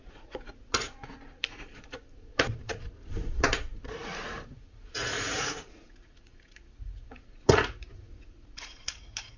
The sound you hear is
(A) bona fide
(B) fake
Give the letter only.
B